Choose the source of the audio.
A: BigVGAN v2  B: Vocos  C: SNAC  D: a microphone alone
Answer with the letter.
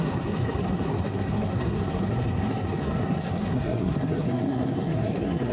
C